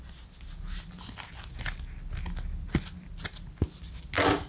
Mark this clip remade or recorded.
recorded